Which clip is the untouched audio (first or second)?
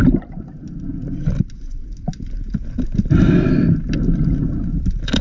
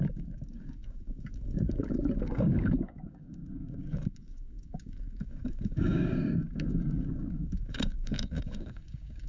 first